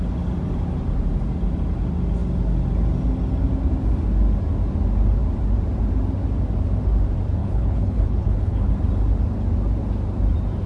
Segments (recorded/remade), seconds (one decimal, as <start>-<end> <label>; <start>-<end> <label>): 0.0-7.4 recorded; 7.4-8.7 remade; 8.7-10.7 recorded